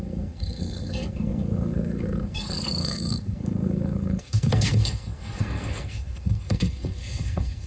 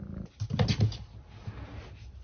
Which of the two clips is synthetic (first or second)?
first